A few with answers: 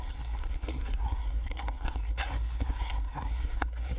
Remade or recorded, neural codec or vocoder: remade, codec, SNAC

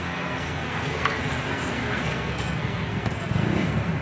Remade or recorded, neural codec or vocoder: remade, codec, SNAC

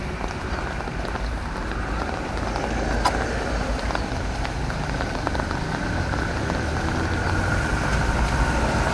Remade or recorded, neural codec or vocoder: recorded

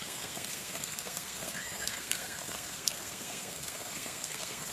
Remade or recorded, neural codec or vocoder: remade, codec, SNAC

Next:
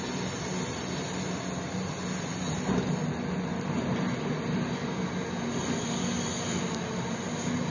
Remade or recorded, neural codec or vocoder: recorded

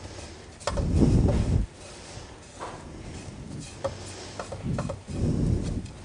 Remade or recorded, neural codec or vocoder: recorded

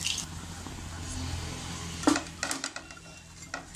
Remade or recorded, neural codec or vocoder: recorded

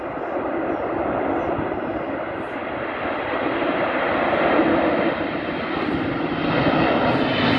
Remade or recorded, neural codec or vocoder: recorded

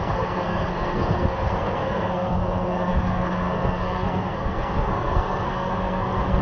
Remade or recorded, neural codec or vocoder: remade, codec, SNAC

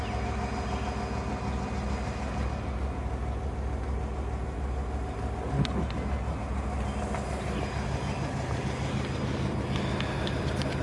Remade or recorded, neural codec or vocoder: recorded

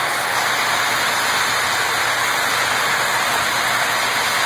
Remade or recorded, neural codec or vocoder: recorded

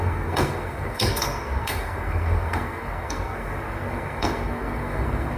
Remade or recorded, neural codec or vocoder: remade, codec, SNAC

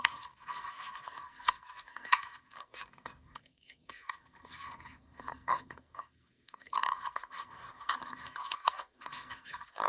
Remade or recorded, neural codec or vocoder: remade, codec, SNAC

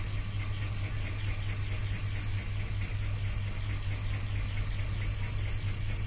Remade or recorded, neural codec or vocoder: recorded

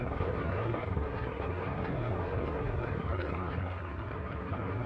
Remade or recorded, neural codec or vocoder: remade, codec, SNAC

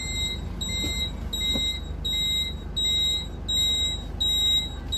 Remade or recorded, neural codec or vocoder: recorded